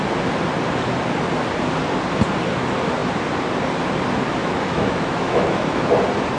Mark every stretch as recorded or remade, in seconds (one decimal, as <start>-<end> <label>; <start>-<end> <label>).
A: 0.0-4.4 recorded; 4.4-5.9 remade; 5.9-6.4 recorded